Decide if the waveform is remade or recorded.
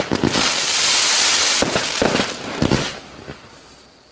recorded